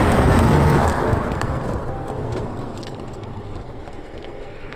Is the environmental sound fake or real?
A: fake